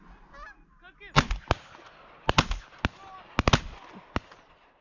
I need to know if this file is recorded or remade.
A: recorded